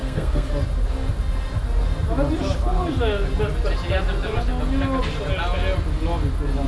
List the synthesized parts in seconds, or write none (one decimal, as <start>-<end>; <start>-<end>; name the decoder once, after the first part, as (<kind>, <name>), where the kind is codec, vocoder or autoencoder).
0.0-0.5 (codec, SNAC)